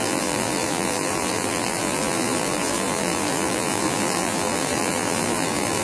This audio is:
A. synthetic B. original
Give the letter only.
A